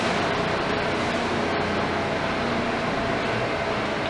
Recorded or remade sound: recorded